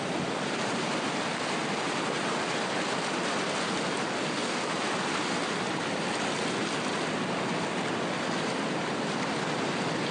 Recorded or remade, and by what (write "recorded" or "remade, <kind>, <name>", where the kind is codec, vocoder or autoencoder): recorded